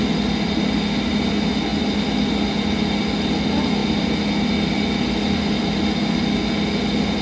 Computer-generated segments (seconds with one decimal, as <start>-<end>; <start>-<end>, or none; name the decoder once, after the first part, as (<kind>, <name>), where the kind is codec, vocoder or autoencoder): none